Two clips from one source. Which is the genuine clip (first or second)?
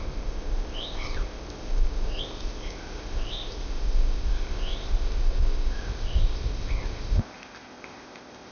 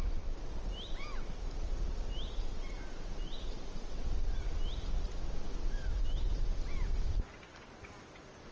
second